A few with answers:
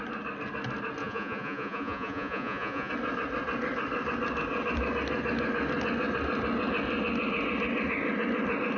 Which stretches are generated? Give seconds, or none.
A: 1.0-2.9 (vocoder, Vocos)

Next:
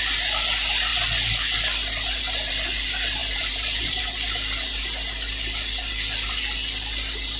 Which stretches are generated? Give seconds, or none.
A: 3.2-4.0 (vocoder, BigVGAN v2)

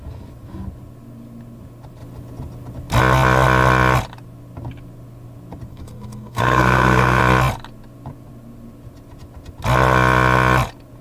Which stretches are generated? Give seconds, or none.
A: 5.7-7.2 (codec, SNAC)

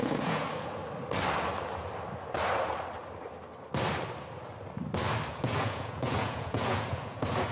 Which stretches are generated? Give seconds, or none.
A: 0.0-0.8 (vocoder, Vocos); 5.3-7.5

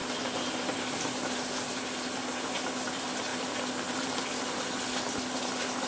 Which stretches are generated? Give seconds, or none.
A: 0.0-2.3 (vocoder, BigVGAN v2); 3.3-3.9

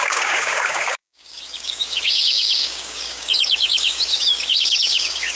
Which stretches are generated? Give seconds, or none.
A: 0.0-5.4 (codec, DAC)